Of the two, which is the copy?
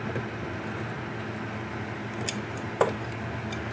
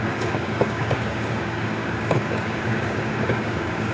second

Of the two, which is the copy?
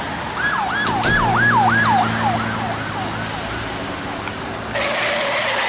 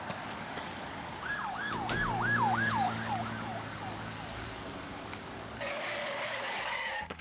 second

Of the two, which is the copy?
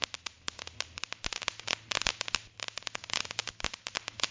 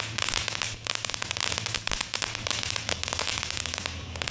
second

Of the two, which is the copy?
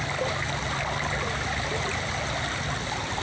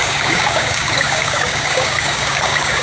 second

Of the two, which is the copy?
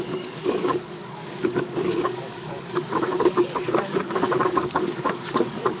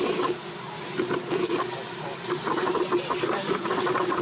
first